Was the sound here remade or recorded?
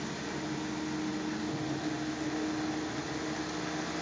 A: recorded